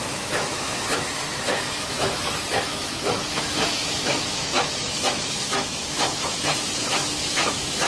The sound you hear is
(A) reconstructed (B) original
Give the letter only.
A